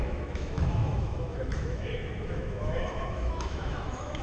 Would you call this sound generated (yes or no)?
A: yes